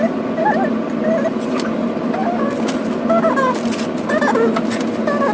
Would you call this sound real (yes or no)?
yes